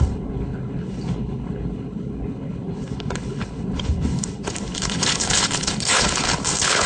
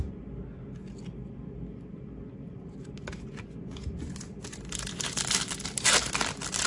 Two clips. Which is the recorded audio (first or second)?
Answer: second